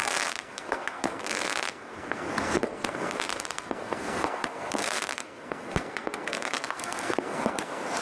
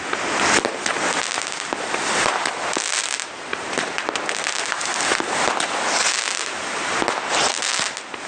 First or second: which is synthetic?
first